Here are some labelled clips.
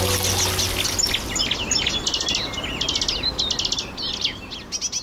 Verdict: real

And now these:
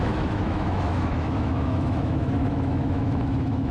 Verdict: fake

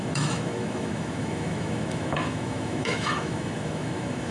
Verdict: fake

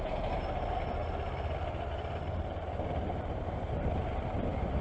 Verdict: real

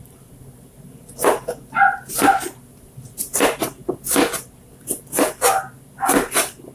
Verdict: real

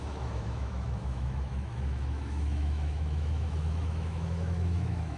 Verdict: fake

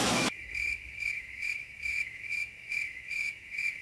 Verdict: fake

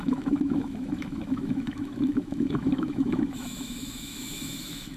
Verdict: fake